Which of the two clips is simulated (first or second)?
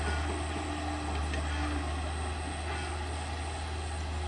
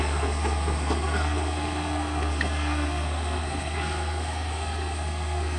second